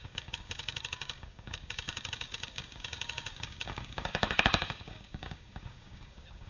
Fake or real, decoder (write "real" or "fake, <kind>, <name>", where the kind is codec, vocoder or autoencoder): fake, codec, DAC